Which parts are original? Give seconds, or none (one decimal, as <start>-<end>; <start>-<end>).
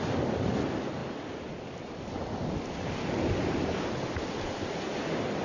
0.0-5.4